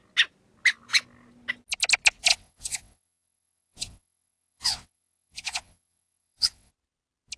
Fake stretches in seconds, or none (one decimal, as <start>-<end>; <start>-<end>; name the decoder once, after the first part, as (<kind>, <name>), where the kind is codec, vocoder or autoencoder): 2.3-6.7 (vocoder, WaveNeXt)